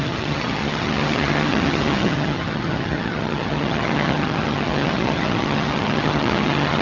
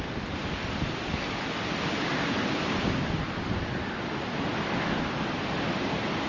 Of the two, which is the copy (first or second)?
first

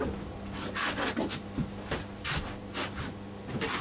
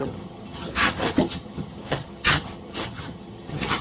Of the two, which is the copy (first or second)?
second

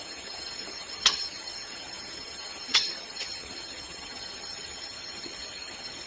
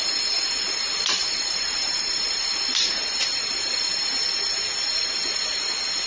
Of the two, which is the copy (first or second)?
first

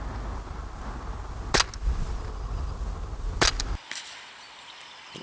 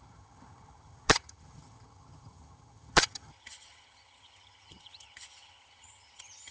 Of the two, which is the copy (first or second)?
second